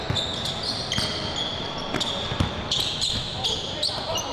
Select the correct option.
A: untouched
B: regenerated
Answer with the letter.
A